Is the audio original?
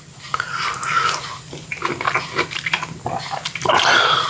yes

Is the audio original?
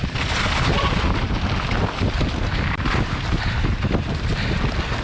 yes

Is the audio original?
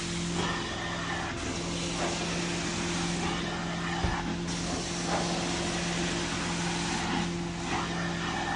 yes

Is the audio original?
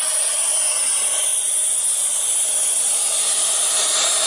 yes